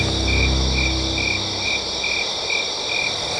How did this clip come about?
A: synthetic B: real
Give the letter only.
B